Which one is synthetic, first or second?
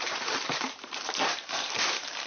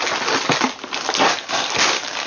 first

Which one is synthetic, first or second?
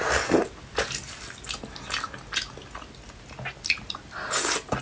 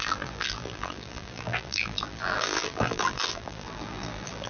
second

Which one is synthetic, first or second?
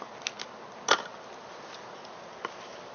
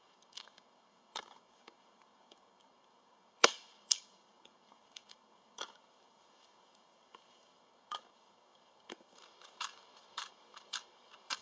second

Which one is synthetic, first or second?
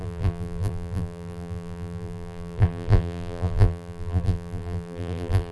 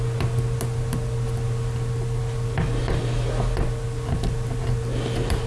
first